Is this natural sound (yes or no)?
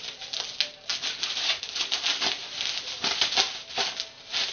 yes